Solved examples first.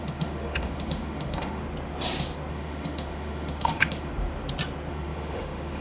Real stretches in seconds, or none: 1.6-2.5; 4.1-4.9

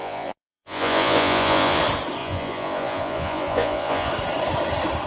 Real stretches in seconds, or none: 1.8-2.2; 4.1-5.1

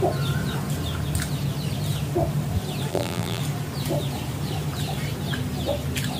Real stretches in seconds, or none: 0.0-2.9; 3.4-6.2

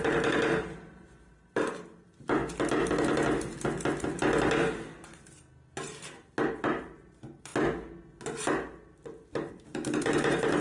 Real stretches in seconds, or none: 2.4-6.5; 7.5-9.5